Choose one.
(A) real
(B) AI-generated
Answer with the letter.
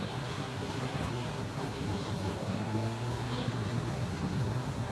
B